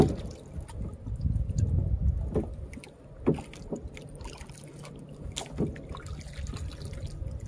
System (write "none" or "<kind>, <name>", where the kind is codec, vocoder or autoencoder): none